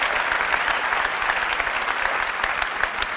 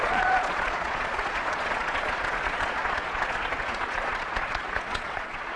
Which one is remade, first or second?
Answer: second